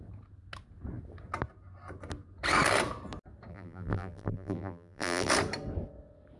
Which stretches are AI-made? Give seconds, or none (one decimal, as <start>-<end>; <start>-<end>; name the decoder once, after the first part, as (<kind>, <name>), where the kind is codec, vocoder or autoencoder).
3.5-5.3 (vocoder, BigVGAN v2)